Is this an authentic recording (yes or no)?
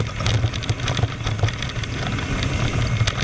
yes